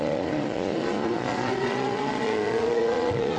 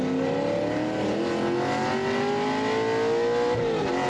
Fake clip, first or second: first